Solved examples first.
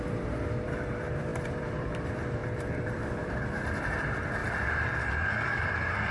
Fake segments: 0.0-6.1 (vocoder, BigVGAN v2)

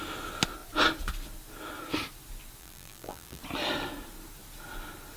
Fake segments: 2.6-3.4 (vocoder, BigVGAN v2)

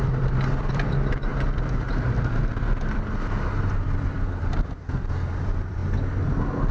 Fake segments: 0.0-1.3 (vocoder, BigVGAN v2); 1.9-2.5; 3.7-5.8

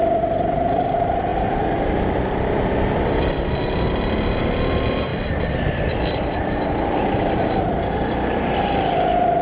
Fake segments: 0.0-5.1 (vocoder, BigVGAN v2); 5.9-9.4